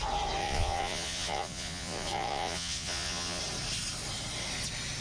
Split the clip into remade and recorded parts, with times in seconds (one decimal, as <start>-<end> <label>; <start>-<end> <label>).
0.0-0.4 recorded; 0.4-3.4 remade; 3.4-5.0 recorded